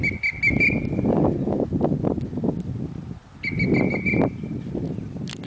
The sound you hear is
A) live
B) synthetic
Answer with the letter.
A